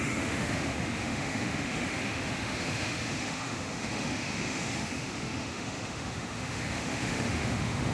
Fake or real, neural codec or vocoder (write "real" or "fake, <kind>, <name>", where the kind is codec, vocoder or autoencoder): fake, autoencoder, DAC-VAE